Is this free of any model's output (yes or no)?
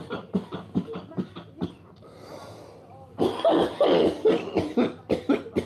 yes